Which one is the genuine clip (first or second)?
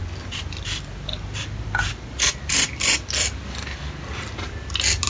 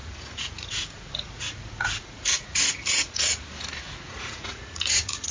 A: first